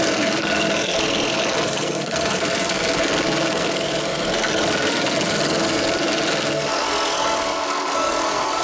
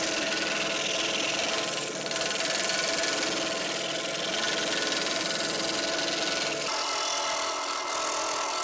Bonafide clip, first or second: second